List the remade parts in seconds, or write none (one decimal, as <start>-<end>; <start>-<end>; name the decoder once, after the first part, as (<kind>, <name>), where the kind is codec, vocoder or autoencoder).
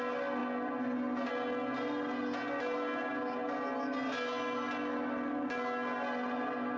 none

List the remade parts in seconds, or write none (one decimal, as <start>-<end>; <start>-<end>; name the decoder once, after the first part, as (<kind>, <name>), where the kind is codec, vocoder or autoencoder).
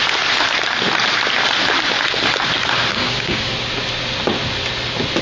2.9-3.5 (codec, DAC)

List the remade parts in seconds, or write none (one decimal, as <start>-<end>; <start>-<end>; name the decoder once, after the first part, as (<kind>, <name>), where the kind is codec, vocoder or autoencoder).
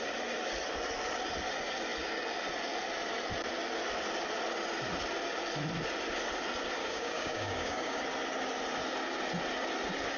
6.8-8.0 (codec, DAC)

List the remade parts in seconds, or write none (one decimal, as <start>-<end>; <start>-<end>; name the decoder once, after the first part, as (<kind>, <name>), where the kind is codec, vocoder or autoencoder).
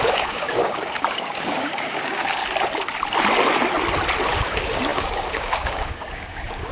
0.0-2.4 (codec, DAC); 4.3-6.7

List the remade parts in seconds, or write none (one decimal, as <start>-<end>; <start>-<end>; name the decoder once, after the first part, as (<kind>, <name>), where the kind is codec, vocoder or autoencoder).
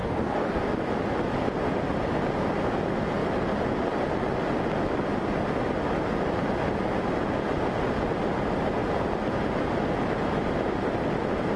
0.0-0.6 (codec, DAC)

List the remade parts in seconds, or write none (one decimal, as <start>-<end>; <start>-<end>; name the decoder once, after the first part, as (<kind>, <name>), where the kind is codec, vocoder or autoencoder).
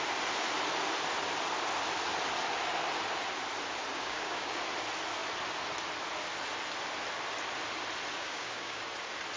3.9-4.6 (codec, DAC); 8.1-8.8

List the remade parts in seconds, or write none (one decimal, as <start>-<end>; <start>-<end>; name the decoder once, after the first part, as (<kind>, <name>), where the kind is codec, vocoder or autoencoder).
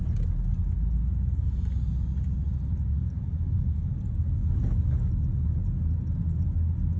2.9-3.9 (codec, DAC); 4.4-5.1